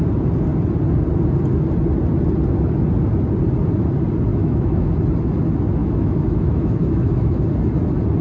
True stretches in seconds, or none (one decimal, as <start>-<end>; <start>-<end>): 0.0-4.3; 4.9-5.8; 7.4-8.2